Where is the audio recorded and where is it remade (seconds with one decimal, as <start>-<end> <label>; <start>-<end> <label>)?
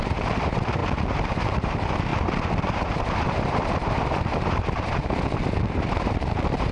0.0-6.7 remade